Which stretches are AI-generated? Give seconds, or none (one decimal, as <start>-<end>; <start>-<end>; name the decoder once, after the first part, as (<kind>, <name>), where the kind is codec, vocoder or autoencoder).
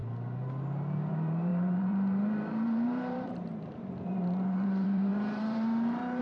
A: 1.1-6.2 (vocoder, BigVGAN v2)